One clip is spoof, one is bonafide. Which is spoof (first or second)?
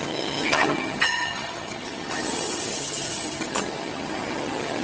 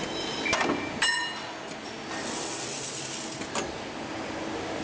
first